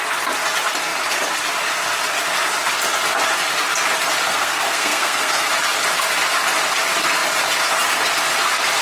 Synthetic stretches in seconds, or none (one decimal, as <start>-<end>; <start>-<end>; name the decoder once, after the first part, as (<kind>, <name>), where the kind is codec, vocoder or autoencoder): 4.3-5.5 (codec, SNAC)